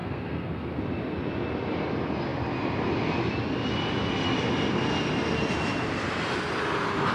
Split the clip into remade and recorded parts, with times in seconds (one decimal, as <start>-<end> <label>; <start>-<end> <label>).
0.0-0.8 remade; 0.8-7.1 recorded